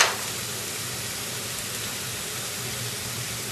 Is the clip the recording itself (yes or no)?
yes